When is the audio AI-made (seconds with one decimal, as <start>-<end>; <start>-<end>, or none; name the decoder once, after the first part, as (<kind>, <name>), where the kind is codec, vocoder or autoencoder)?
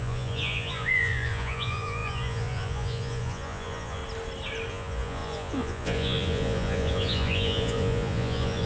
0.0-4.0 (vocoder, Vocos); 4.7-8.7